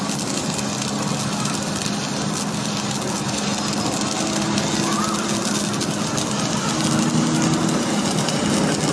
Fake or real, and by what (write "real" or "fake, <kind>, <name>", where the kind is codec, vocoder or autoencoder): real